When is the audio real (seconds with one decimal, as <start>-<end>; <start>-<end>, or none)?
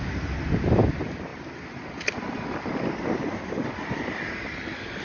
0.0-5.0